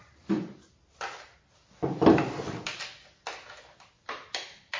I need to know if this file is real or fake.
real